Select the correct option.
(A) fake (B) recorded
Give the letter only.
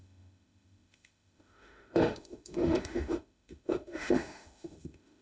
A